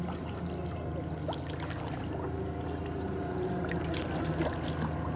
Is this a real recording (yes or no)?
yes